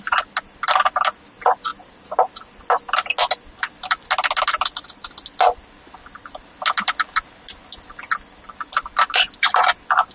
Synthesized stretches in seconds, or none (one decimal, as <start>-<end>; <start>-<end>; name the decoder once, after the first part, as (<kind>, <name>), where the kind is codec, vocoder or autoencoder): none